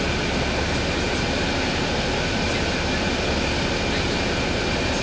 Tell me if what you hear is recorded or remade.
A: recorded